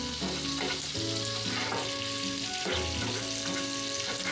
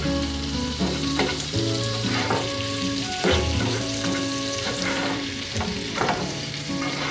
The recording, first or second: first